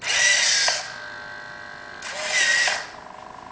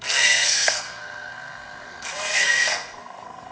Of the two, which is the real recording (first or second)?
first